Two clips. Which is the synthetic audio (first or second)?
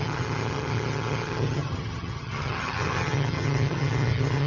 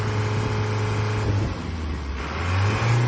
first